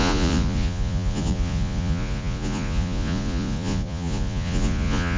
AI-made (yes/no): yes